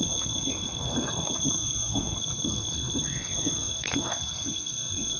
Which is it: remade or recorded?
remade